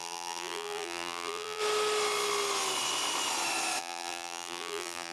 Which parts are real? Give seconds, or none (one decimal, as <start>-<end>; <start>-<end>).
1.6-3.8